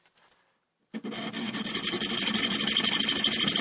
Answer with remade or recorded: recorded